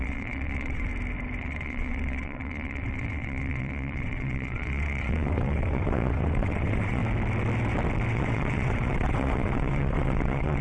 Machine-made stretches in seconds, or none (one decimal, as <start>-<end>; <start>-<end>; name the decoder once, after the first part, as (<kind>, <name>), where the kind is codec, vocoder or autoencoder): 0.0-0.9 (vocoder, WaveNeXt); 1.4-7.0; 8.1-10.6